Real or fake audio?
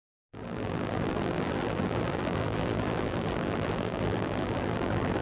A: fake